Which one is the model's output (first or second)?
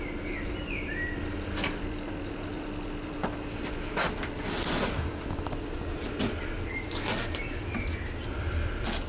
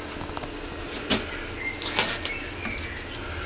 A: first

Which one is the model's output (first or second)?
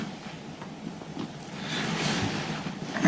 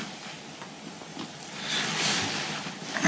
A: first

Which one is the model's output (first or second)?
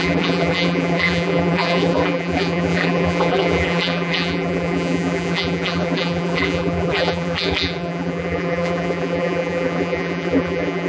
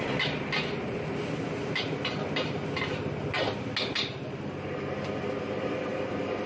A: first